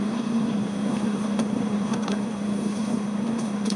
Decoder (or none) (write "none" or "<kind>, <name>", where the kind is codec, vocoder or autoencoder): codec, SNAC